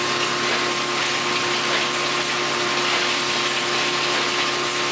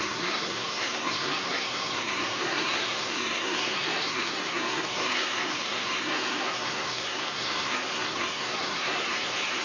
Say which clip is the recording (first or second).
first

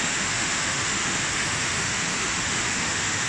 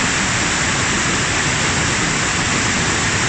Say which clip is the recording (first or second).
second